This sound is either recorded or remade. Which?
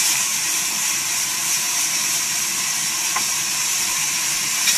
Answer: remade